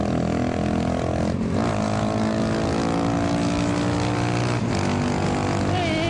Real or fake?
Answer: real